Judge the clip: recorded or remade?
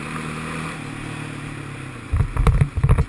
recorded